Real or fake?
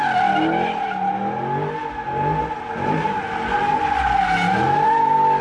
real